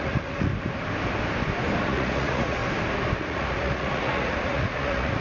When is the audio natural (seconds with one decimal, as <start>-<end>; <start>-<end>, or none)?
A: 0.5-1.8; 2.6-3.2